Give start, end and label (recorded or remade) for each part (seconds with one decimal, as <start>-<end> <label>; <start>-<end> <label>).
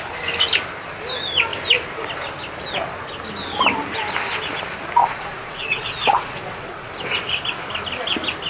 0.0-5.0 recorded; 5.0-6.9 remade; 6.9-8.5 recorded